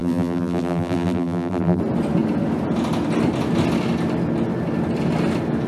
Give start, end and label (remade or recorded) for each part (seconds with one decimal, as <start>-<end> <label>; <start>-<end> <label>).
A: 0.0-1.8 remade; 1.8-5.7 recorded